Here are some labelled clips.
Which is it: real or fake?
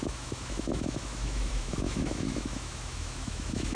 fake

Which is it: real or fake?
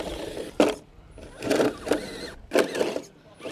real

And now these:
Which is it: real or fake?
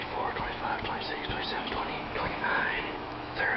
fake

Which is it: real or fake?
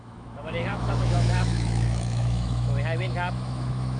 fake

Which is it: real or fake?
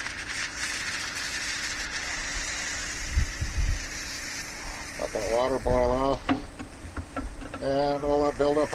real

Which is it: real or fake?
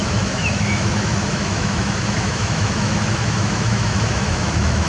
fake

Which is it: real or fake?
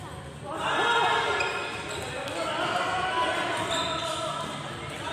real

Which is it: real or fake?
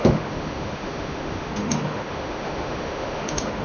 fake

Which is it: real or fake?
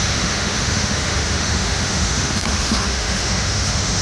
fake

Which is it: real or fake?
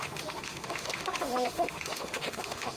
fake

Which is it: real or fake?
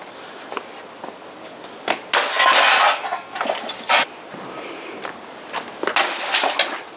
real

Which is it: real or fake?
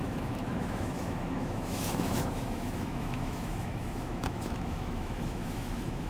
fake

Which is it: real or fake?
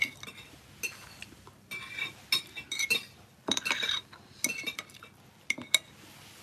real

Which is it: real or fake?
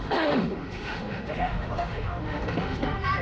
fake